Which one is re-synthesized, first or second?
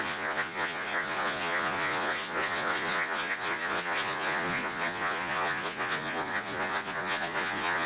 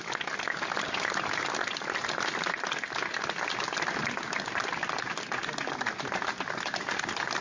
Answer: first